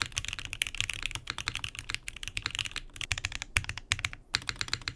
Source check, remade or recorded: recorded